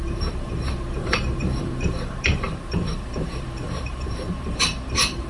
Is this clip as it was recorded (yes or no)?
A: no